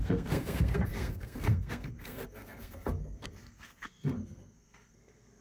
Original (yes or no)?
no